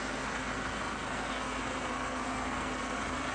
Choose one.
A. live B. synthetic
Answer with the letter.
B